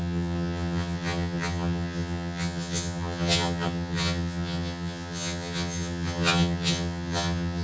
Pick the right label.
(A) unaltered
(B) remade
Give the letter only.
B